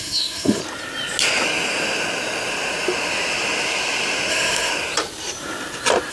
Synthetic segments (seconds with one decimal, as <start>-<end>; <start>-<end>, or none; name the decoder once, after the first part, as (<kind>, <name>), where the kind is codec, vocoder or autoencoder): 0.0-0.6 (autoencoder, DAC-VAE); 4.3-4.7